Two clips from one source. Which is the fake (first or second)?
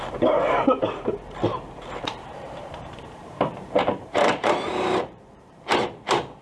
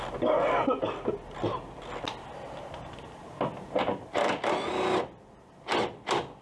first